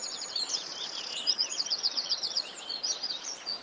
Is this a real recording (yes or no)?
no